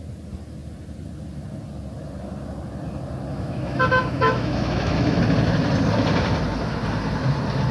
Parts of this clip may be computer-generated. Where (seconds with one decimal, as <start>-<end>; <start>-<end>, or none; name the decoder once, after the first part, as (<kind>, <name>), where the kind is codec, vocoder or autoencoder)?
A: 3.3-5.2 (autoencoder, DAC-VAE)

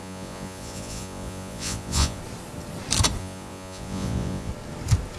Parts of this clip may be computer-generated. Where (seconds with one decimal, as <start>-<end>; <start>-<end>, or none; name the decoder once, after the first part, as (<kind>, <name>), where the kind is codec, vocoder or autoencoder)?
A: 0.0-2.2 (vocoder, Vocos); 3.2-4.5

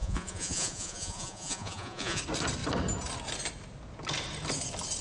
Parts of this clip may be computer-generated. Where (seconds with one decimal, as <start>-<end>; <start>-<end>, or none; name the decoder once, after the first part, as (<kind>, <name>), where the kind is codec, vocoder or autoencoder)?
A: 0.0-2.2 (vocoder, Vocos)

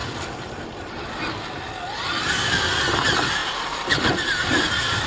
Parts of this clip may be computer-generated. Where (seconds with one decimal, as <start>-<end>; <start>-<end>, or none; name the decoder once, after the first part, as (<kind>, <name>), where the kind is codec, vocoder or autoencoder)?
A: none

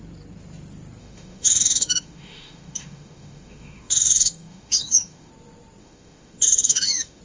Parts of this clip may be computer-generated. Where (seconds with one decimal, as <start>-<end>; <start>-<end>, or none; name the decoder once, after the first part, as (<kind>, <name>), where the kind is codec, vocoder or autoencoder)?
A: 1.0-5.3 (autoencoder, DAC-VAE); 5.8-7.2